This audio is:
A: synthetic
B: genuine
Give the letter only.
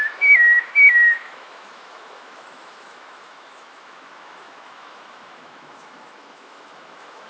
A